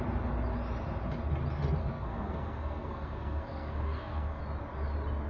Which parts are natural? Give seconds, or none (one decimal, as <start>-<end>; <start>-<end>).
0.0-1.8; 4.4-5.3